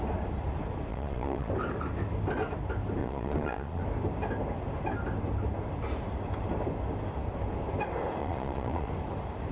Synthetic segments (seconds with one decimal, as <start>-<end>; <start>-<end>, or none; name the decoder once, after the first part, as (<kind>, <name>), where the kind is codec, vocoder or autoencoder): 0.9-1.5 (vocoder, Vocos); 3.0-3.8; 8.2-8.9